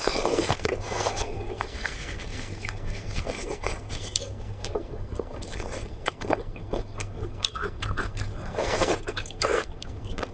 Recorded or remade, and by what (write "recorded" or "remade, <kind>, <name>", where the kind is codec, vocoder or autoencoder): remade, codec, SNAC